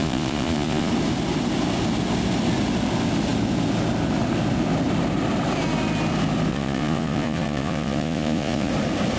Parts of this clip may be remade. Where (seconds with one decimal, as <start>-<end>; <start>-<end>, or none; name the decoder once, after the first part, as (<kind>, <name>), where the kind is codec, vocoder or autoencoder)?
0.0-0.9 (vocoder, Vocos); 6.5-8.7